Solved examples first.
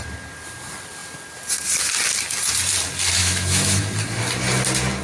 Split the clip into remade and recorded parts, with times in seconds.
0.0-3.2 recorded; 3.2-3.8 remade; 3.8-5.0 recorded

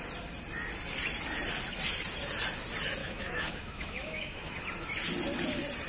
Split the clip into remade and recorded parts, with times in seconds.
0.0-3.0 recorded; 3.0-4.6 remade; 4.6-5.9 recorded